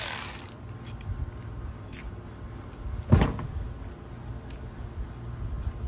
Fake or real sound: real